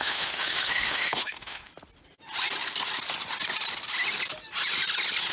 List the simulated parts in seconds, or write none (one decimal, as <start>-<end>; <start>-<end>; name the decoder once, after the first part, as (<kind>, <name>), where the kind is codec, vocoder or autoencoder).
0.0-1.7 (autoencoder, DAC-VAE)